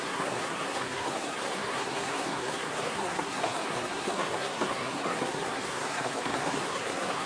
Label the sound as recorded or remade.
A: remade